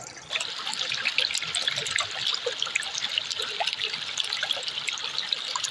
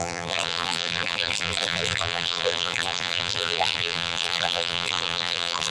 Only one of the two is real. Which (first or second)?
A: first